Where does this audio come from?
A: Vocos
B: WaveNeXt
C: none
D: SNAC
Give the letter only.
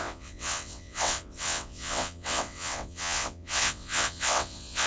B